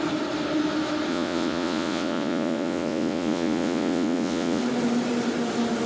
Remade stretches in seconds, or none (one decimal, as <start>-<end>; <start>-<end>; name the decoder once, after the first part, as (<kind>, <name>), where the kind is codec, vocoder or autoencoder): 1.1-4.6 (vocoder, Vocos)